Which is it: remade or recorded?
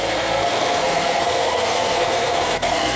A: remade